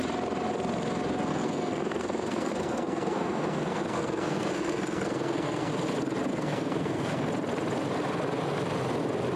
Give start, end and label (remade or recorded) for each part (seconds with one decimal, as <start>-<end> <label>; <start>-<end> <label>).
0.0-1.3 recorded; 1.3-5.7 remade; 5.7-6.3 recorded; 6.3-7.3 remade; 7.3-9.4 recorded